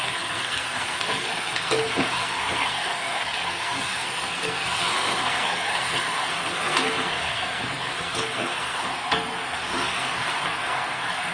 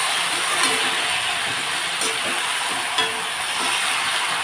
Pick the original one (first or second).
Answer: second